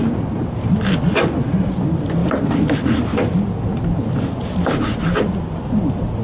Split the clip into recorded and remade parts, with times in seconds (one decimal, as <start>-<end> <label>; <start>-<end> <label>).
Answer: 0.0-6.2 recorded